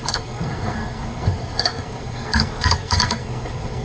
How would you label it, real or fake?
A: fake